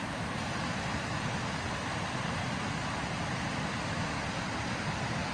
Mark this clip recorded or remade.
recorded